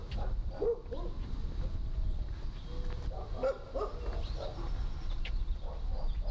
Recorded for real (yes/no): yes